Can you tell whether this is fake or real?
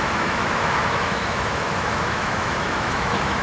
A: fake